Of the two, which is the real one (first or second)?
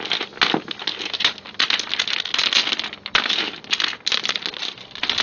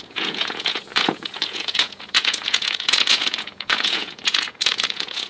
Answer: first